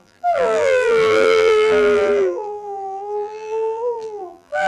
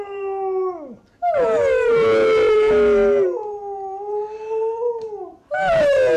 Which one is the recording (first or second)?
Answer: second